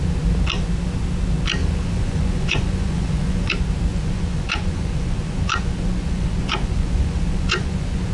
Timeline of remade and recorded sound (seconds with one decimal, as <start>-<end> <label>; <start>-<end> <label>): 0.0-1.6 recorded; 1.6-3.5 remade; 3.5-3.9 recorded; 3.9-8.1 remade